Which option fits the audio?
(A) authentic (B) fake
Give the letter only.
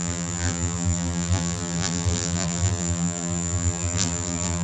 B